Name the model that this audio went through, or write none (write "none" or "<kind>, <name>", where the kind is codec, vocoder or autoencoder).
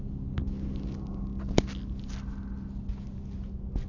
none